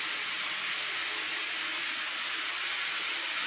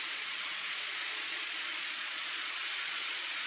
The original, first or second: first